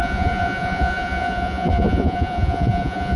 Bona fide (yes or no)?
no